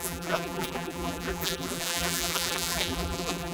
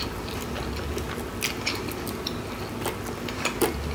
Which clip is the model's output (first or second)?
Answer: first